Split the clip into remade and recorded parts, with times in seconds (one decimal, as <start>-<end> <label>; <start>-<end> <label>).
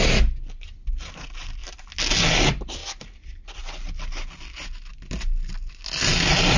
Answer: 0.0-6.6 recorded